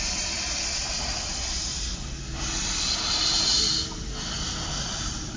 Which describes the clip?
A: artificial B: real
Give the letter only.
B